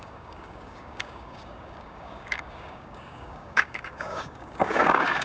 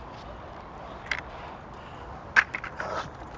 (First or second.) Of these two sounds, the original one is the second